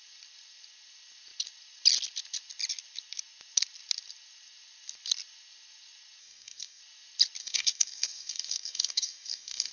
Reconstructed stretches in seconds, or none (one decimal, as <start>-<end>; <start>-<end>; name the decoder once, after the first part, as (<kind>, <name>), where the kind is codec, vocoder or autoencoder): 6.2-6.8 (codec, DAC); 7.4-9.7